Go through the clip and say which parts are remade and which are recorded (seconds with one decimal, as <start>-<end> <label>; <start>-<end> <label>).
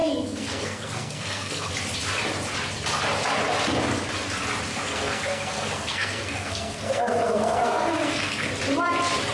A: 0.0-1.7 remade; 1.7-4.7 recorded; 4.7-8.5 remade; 8.5-9.3 recorded